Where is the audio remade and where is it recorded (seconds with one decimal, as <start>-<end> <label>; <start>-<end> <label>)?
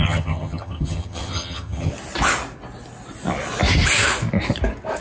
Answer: 0.0-1.9 remade; 1.9-5.0 recorded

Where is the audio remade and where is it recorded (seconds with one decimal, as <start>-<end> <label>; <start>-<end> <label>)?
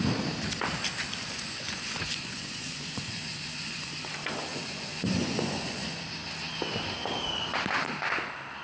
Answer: 0.0-1.2 recorded; 1.2-4.1 remade; 4.1-4.5 recorded; 4.5-6.0 remade; 6.0-8.6 recorded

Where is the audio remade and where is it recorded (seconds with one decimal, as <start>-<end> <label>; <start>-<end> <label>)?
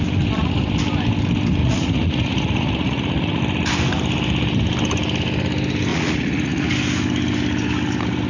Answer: 0.0-1.6 recorded; 1.6-3.4 remade; 3.4-5.9 recorded; 5.9-6.7 remade; 6.7-8.3 recorded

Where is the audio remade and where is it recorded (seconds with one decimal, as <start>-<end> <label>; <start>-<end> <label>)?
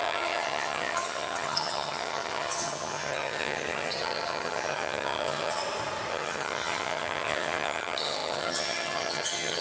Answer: 0.0-5.6 remade; 5.6-6.1 recorded; 6.1-9.6 remade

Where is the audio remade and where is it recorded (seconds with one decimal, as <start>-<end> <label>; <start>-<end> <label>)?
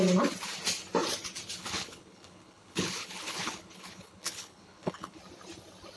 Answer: 0.0-1.6 recorded; 1.6-5.2 remade; 5.2-6.0 recorded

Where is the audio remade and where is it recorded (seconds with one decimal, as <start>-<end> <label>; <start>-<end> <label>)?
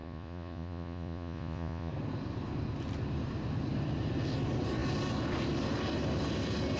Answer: 0.0-1.9 remade; 1.9-6.8 recorded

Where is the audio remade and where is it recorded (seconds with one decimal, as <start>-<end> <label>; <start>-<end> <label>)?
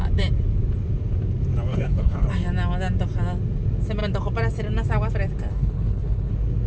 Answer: 0.0-1.7 recorded; 1.7-2.3 remade; 2.3-5.5 recorded; 5.5-6.3 remade; 6.3-6.7 recorded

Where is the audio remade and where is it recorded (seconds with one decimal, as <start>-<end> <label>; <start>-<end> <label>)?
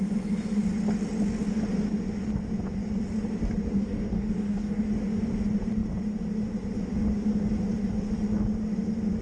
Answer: 0.0-3.8 recorded; 3.8-4.8 remade; 4.8-9.2 recorded